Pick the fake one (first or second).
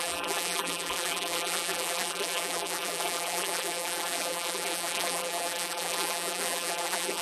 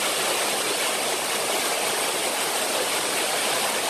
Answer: first